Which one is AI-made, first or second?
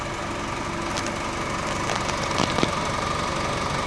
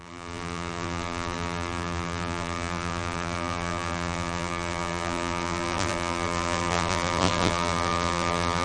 second